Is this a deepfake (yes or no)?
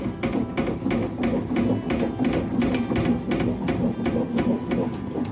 no